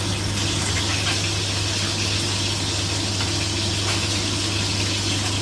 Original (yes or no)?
yes